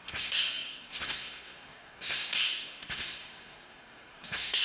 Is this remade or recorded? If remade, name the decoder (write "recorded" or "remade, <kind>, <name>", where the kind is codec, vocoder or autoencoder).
remade, codec, SNAC